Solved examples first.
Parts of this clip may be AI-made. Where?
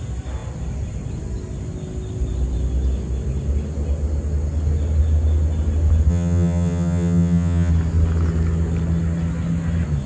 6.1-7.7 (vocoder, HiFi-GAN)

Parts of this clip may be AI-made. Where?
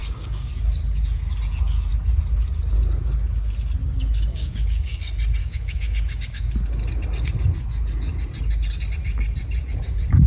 0.0-0.5 (codec, DAC); 4.3-5.0; 5.4-6.5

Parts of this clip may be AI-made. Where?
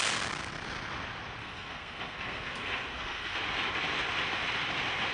1.4-3.4 (codec, SNAC)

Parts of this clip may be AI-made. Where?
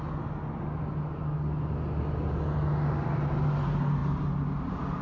none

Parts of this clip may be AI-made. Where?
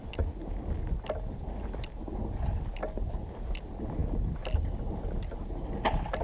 none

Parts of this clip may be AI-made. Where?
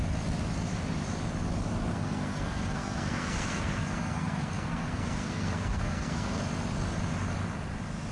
1.9-6.4 (codec, SNAC)